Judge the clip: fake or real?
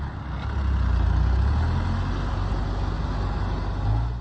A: real